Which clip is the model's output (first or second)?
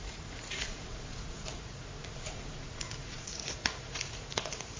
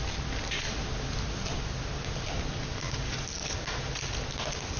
first